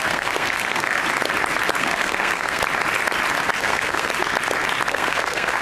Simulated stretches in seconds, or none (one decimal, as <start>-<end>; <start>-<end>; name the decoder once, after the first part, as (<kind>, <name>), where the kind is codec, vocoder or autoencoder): 0.0-1.0 (codec, SNAC); 1.8-2.6; 3.6-4.1; 4.9-5.6